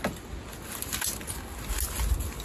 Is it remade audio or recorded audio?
recorded